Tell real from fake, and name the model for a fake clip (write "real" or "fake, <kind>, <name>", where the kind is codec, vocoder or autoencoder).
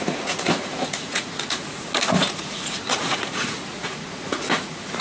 fake, vocoder, Vocos